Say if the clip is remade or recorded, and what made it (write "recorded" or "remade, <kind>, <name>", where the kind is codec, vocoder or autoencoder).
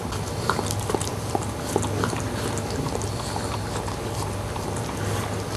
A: recorded